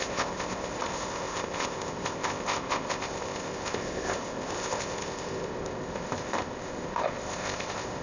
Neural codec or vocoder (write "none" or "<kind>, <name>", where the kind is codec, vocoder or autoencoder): codec, ZipCodec